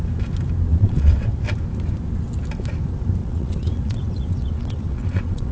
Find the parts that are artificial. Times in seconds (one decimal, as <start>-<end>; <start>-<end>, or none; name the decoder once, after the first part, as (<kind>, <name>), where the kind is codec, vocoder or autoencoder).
0.7-1.3 (vocoder, WaveNeXt); 3.2-5.5